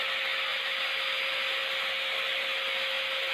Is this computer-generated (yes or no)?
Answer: no